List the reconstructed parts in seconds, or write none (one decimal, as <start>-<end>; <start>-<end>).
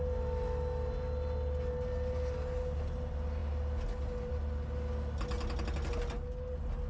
none